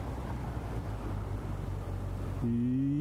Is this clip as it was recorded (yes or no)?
yes